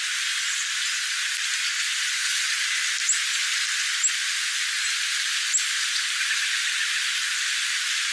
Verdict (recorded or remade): recorded